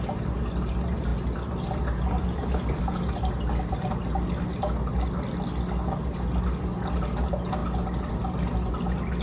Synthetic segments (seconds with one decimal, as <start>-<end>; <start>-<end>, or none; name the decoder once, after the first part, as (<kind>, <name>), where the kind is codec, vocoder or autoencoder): none